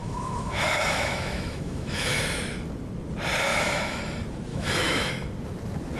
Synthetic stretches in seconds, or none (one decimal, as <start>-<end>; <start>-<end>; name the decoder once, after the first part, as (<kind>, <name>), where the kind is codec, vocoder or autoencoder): 0.0-2.2 (autoencoder, DAC-VAE); 3.5-4.0; 4.5-5.1

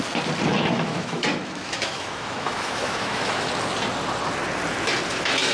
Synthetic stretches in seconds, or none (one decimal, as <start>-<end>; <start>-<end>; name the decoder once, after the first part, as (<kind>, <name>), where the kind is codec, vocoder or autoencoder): 0.5-3.5 (autoencoder, DAC-VAE)

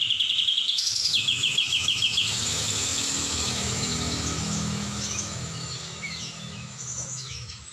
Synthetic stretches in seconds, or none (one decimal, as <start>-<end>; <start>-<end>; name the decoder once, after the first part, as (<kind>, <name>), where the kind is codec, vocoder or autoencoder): 0.0-7.7 (autoencoder, DAC-VAE)

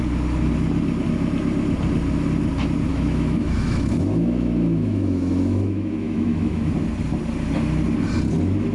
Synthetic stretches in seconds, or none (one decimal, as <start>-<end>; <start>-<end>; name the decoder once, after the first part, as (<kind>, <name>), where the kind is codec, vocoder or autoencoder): 2.9-6.7 (autoencoder, DAC-VAE)

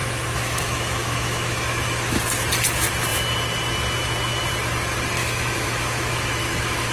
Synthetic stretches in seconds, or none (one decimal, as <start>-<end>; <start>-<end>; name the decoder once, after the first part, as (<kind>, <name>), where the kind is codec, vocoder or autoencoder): 0.0-2.2 (autoencoder, DAC-VAE); 5.2-6.9

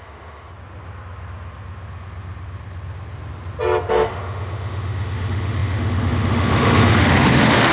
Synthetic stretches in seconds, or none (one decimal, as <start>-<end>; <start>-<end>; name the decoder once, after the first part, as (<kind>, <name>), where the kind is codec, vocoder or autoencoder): 0.0-0.5 (autoencoder, DAC-VAE); 3.9-7.7